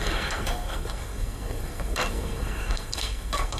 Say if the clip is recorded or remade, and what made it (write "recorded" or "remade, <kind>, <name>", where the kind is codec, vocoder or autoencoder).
remade, codec, SNAC